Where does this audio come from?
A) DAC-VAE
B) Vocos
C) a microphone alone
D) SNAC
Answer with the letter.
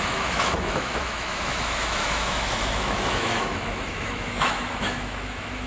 A